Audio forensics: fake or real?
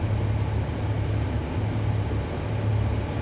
real